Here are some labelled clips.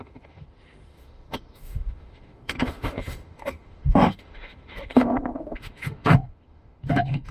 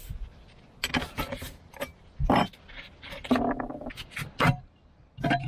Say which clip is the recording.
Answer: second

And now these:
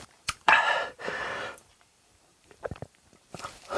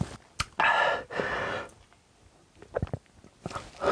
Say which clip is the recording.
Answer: second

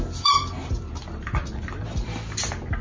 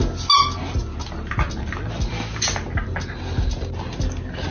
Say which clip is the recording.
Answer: second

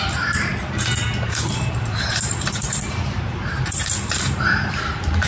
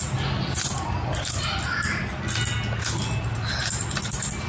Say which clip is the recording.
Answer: second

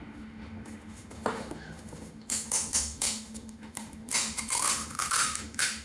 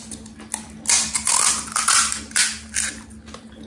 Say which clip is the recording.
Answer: second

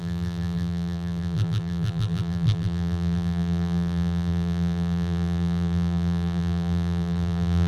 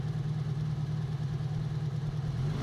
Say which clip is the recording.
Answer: second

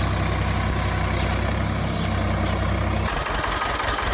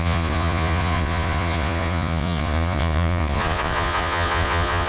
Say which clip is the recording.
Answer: first